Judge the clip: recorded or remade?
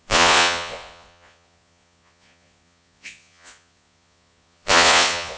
remade